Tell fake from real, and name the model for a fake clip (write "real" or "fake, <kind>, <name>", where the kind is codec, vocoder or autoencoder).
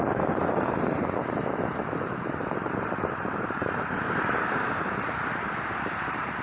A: fake, vocoder, BigVGAN v2